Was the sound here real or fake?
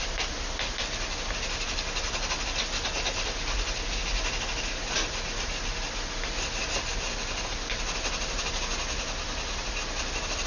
real